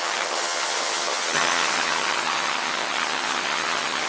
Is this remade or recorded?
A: remade